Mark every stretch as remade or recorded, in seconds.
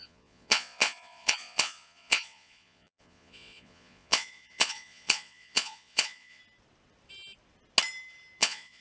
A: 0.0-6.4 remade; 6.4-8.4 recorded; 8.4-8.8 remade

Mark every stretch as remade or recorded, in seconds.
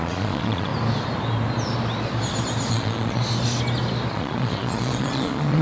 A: 0.0-0.7 remade; 0.7-2.7 recorded; 2.7-3.2 remade; 3.2-4.1 recorded; 4.1-5.6 remade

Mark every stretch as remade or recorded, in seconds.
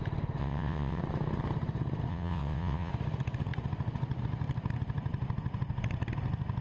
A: 0.0-0.4 recorded; 0.4-1.0 remade; 1.0-2.1 recorded; 2.1-2.9 remade; 2.9-6.6 recorded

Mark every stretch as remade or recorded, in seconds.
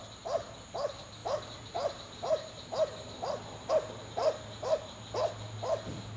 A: 0.0-6.2 recorded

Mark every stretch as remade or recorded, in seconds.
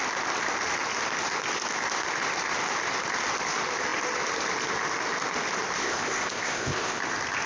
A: 0.0-5.8 recorded; 5.8-7.0 remade; 7.0-7.5 recorded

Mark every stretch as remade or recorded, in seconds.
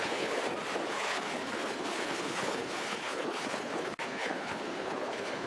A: 0.0-0.4 remade; 0.4-0.9 recorded; 0.9-5.5 remade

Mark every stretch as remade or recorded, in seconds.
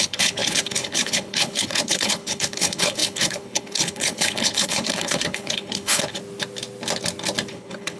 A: 0.0-6.2 remade; 6.2-7.5 recorded; 7.5-8.0 remade